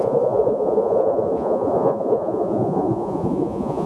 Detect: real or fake fake